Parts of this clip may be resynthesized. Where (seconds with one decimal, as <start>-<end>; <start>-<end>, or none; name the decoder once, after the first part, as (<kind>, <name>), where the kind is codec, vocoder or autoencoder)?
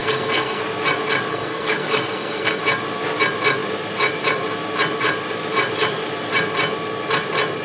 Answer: 0.0-0.6 (codec, SNAC); 1.3-2.6